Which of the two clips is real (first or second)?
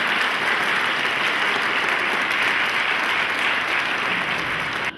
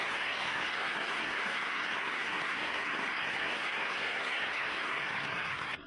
first